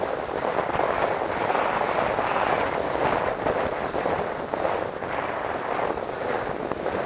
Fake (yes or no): no